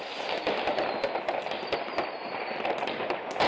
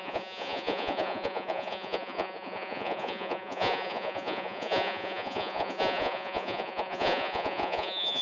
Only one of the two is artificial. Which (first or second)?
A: second